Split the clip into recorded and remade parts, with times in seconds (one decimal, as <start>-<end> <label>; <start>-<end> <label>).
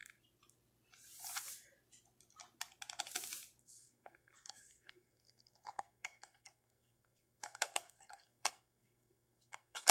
0.0-3.6 recorded; 3.6-9.9 remade